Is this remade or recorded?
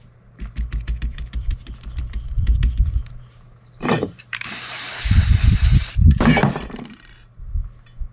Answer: remade